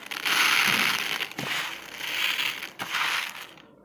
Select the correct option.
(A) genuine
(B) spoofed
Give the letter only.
A